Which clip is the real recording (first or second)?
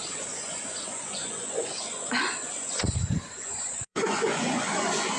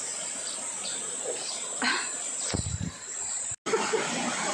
second